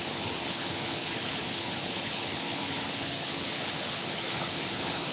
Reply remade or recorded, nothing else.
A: remade